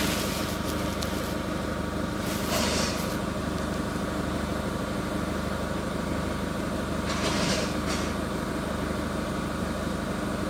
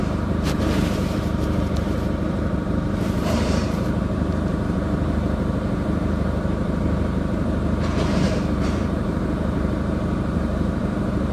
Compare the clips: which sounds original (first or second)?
first